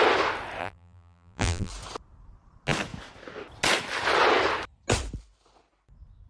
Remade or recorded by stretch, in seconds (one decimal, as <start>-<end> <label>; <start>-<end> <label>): 0.0-0.6 recorded; 0.6-1.7 remade; 1.7-6.3 recorded